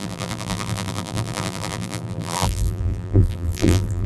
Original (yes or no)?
no